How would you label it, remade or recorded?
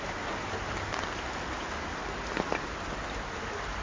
recorded